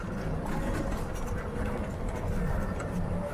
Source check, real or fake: real